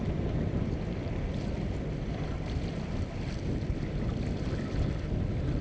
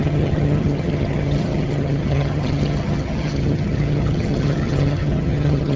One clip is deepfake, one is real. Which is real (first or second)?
first